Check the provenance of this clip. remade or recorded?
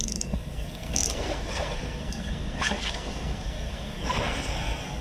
remade